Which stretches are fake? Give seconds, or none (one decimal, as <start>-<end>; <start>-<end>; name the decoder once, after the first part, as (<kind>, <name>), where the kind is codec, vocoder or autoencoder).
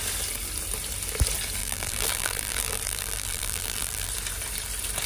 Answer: 1.6-4.1 (vocoder, BigVGAN v2)